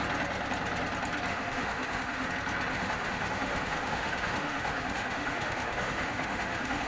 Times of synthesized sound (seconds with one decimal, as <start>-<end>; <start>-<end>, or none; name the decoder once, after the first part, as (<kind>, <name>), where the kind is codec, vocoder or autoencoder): 1.3-2.3 (autoencoder, DAC-VAE); 2.7-6.9